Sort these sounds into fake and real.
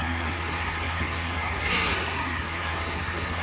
fake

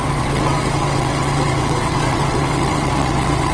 fake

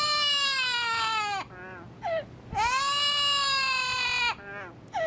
real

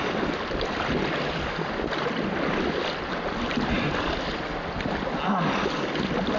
real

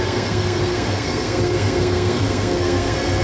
fake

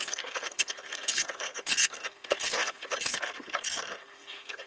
fake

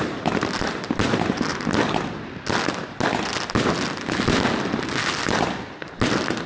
real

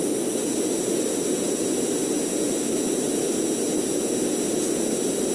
real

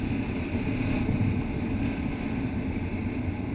real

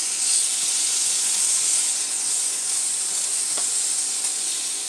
fake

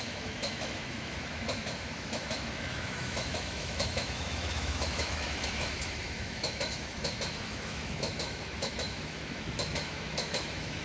fake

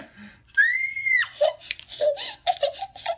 fake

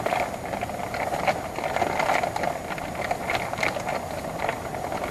real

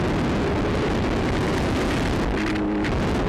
real